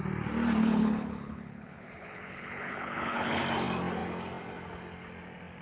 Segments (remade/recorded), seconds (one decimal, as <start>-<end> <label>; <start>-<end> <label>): 0.0-0.6 recorded; 0.6-3.4 remade; 3.4-5.6 recorded